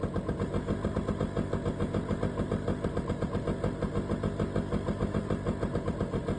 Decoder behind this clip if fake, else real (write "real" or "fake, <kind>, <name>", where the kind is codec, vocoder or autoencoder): real